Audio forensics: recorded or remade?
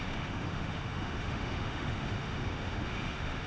remade